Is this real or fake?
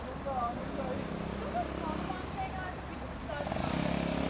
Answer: real